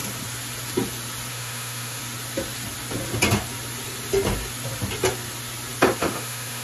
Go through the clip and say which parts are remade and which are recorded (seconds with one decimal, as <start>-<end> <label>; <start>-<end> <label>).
0.0-1.3 recorded; 1.3-2.0 remade; 2.0-6.0 recorded; 6.0-6.6 remade